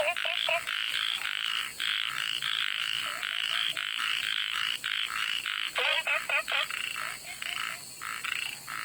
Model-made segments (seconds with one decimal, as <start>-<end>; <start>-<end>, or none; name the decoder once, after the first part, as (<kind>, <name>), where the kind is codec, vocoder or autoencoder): none